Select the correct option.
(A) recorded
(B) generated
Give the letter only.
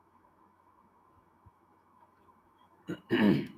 B